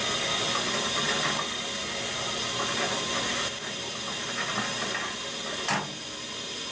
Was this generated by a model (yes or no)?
no